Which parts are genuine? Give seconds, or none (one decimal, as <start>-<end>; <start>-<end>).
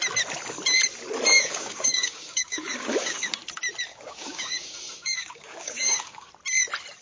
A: 0.0-1.3; 3.3-3.9; 6.3-7.0